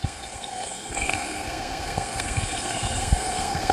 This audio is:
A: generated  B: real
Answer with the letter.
A